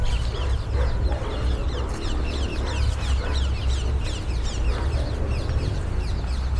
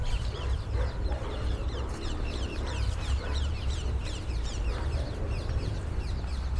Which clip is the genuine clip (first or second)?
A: first